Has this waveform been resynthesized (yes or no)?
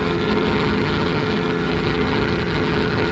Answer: yes